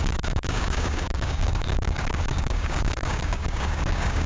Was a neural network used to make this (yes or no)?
yes